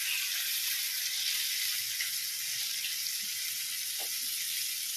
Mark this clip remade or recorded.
recorded